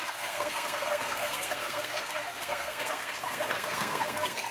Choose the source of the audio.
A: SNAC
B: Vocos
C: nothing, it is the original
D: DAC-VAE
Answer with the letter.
A